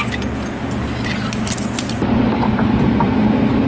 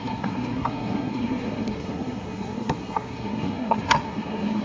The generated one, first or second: second